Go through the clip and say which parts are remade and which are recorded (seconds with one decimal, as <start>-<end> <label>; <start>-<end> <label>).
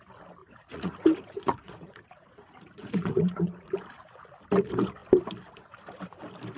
0.0-0.4 recorded; 0.4-3.7 remade; 3.7-6.6 recorded